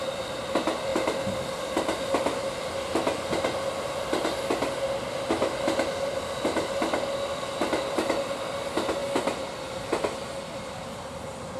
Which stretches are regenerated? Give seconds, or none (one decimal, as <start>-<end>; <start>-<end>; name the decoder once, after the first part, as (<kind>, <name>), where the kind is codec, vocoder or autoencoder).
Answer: none